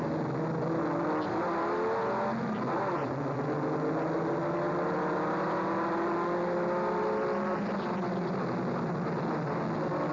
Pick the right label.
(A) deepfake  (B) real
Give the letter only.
B